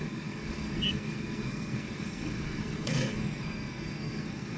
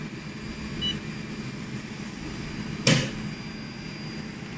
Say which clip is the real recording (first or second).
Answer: second